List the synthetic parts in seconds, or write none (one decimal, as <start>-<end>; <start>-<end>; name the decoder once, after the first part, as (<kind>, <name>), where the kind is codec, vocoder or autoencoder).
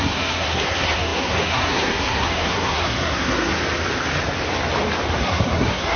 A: 0.0-3.6 (codec, SNAC); 5.2-6.0